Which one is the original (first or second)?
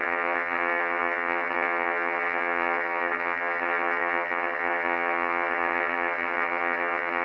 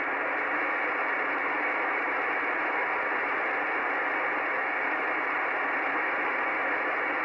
second